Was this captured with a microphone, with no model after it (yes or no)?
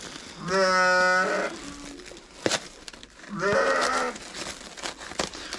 yes